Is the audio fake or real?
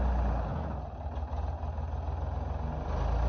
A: real